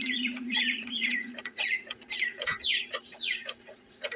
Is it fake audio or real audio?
fake